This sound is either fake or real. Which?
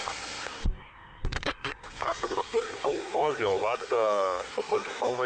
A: fake